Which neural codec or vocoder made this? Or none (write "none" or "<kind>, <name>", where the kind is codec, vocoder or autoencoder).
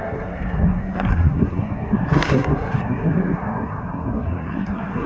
codec, SNAC